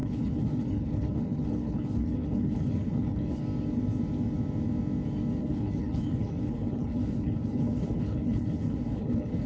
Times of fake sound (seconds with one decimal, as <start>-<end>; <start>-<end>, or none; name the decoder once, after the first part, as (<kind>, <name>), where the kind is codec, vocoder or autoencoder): 0.0-3.4 (codec, HILCodec); 5.4-9.5